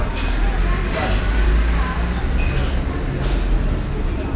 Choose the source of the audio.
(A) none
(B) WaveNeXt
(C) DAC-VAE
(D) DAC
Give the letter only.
A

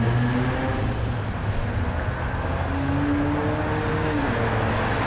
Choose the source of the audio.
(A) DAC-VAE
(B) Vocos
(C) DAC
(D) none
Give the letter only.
D